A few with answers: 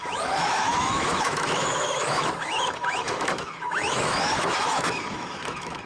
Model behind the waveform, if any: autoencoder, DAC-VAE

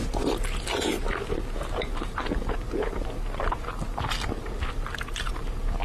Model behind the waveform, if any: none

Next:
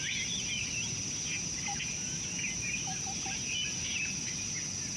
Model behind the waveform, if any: none